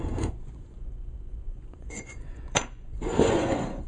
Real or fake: fake